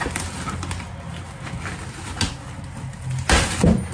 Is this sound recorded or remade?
recorded